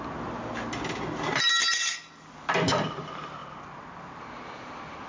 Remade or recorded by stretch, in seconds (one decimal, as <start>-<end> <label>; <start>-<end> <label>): 0.0-5.1 recorded